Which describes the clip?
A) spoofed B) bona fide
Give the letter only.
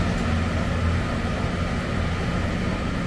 B